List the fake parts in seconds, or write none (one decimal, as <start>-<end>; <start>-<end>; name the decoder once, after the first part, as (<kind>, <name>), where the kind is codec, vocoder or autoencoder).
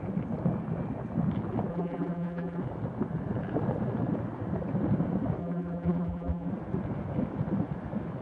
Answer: 1.7-2.6 (vocoder, BigVGAN v2); 5.4-6.5